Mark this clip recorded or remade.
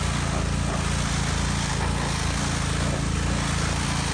recorded